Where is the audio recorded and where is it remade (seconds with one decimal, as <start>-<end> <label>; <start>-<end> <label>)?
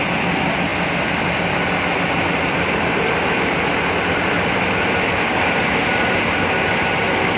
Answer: 0.0-7.4 recorded